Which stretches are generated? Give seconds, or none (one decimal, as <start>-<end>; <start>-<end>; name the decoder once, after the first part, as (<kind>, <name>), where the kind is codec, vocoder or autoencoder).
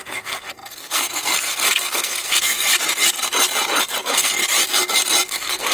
0.0-2.7 (codec, SNAC); 4.0-4.4; 5.3-5.7